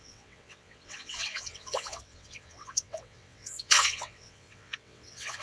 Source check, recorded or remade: remade